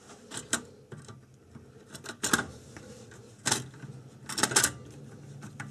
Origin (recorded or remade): recorded